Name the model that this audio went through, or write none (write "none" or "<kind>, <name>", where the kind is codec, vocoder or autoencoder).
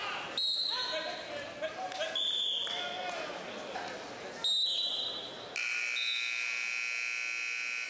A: none